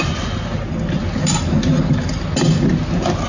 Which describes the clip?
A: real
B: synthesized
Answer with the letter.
A